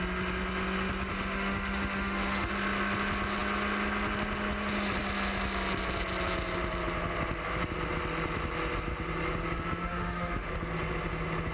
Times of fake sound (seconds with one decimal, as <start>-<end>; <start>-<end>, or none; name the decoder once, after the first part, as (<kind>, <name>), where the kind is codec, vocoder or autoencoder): 1.1-2.5 (autoencoder, DAC-VAE); 9.8-10.5